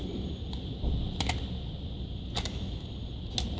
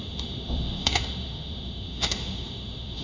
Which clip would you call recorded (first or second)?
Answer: first